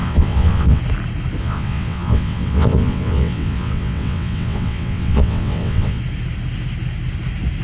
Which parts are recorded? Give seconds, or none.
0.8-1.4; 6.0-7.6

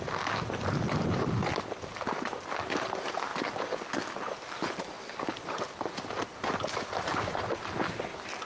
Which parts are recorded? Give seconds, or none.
0.0-8.4